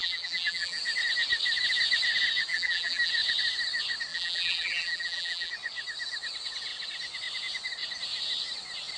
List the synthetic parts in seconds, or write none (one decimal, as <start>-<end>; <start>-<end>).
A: 0.0-0.8; 2.5-3.1; 4.1-5.5